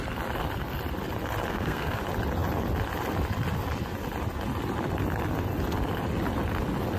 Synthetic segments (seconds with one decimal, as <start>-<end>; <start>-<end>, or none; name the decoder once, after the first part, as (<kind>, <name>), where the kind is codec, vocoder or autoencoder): 1.5-2.0 (codec, SNAC)